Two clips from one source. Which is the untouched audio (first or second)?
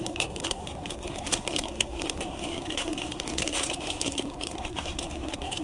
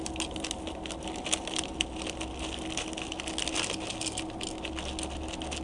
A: second